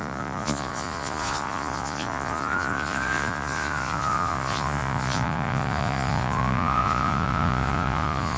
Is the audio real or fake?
fake